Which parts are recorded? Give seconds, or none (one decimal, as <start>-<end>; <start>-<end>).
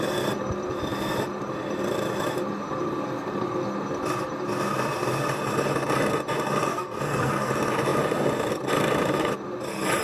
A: 0.0-6.7; 7.5-10.0